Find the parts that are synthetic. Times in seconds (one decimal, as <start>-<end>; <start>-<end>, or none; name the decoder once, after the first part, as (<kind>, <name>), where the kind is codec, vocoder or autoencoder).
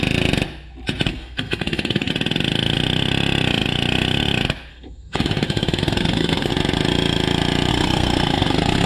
1.1-2.1 (codec, SNAC); 4.7-6.5; 7.7-8.9